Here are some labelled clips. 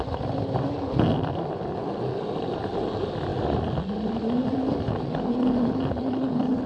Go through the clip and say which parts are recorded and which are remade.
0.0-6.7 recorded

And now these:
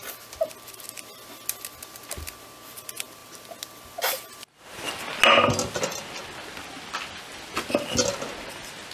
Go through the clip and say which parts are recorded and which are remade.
0.0-8.9 recorded

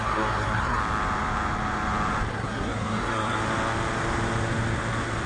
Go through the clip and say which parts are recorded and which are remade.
0.0-0.8 remade; 0.8-2.3 recorded; 2.3-3.4 remade; 3.4-5.3 recorded